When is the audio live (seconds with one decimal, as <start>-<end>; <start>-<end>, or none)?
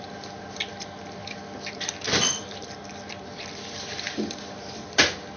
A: 0.0-1.2; 4.4-5.4